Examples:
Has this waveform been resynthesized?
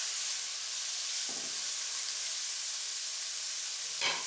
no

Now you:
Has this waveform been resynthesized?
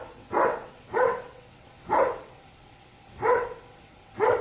yes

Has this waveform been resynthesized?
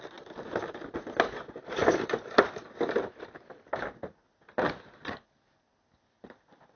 no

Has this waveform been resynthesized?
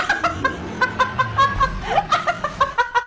no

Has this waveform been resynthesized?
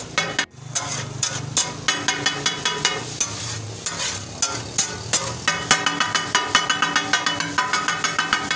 no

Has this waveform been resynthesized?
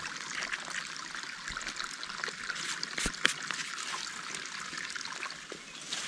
no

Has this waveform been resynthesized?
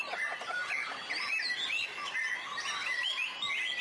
no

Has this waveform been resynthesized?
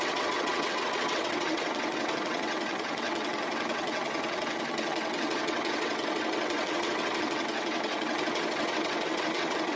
yes